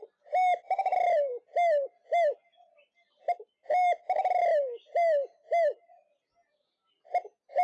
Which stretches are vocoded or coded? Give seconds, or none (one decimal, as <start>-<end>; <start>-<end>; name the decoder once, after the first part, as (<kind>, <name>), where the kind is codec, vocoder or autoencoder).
none